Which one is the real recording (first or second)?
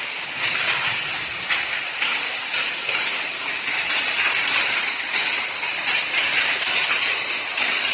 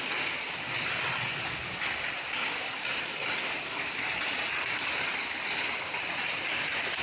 second